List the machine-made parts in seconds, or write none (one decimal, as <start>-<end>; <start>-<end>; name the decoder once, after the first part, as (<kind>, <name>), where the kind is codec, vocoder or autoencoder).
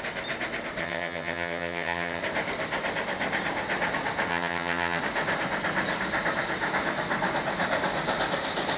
0.8-2.2 (vocoder, HiFi-GAN); 4.3-5.0